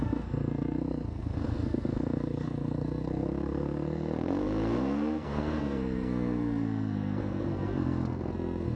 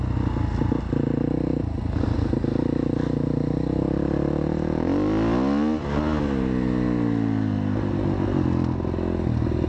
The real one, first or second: second